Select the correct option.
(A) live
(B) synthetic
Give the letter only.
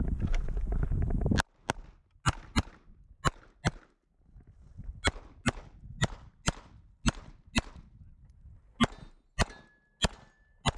A